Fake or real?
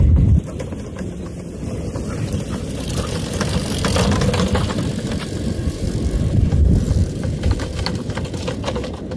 real